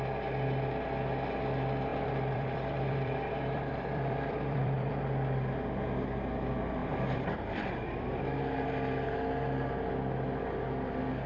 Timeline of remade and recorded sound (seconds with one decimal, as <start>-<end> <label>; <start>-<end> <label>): 0.0-1.9 recorded; 1.9-4.9 remade; 4.9-6.8 recorded; 6.8-8.2 remade; 8.2-11.3 recorded